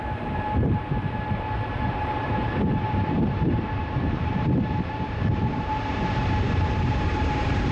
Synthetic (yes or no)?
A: yes